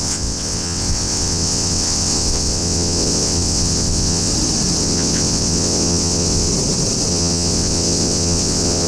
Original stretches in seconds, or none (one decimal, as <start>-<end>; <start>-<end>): 4.3-4.8; 6.5-7.1